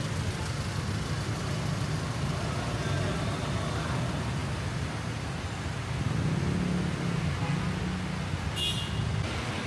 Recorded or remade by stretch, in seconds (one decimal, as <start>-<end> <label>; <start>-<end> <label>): 0.0-9.7 recorded